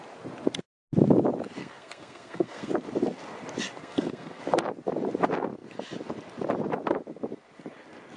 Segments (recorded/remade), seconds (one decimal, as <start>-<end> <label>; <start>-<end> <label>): 0.0-1.6 recorded; 1.6-2.7 remade; 2.7-3.8 recorded; 3.8-4.4 remade; 4.4-8.2 recorded